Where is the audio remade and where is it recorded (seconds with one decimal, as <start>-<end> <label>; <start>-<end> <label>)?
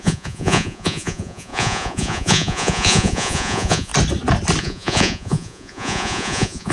0.0-3.9 remade; 3.9-4.6 recorded; 4.6-6.7 remade